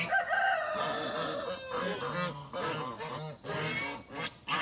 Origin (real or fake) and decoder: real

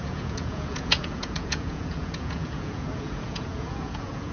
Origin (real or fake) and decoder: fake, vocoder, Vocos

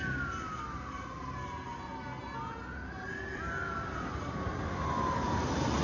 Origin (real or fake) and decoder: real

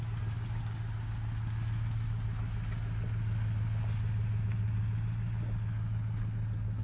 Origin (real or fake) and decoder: real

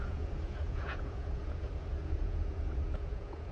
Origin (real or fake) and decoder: fake, vocoder, Vocos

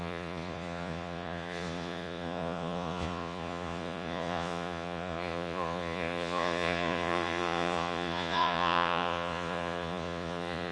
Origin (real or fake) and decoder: fake, vocoder, Vocos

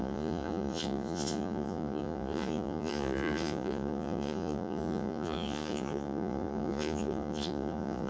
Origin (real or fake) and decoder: fake, vocoder, Vocos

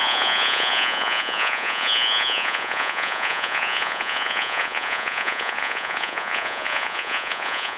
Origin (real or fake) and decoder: fake, vocoder, Vocos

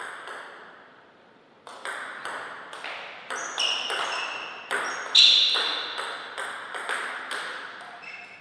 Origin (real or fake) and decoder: real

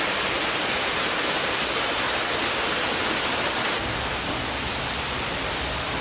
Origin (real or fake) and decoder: real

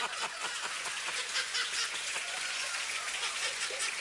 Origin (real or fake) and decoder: fake, vocoder, Vocos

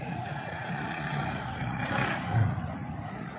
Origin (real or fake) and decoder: fake, vocoder, Vocos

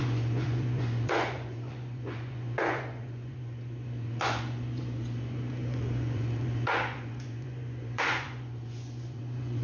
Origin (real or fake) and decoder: fake, vocoder, Vocos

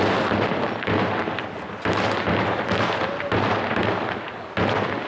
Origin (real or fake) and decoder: real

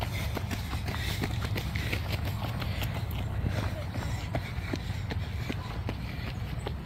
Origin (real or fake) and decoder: real